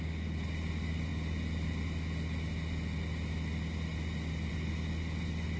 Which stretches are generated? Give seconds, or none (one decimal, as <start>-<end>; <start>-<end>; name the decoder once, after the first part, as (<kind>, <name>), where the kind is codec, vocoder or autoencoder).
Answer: none